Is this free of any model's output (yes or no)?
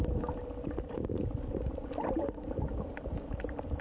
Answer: yes